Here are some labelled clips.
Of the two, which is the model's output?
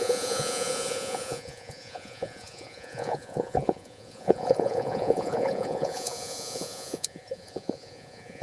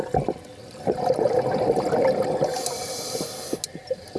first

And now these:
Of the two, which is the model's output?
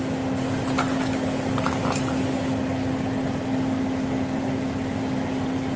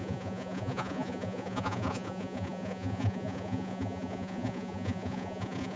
second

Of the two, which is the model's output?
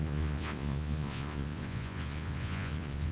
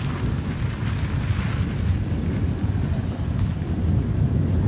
first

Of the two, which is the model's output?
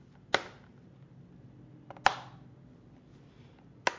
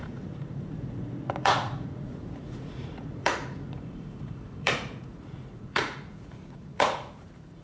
second